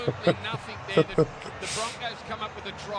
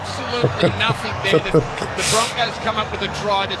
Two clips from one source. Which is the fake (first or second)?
second